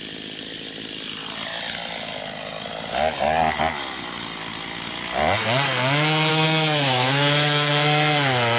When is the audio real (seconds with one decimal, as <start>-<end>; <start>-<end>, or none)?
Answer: 0.0-6.3; 7.7-8.6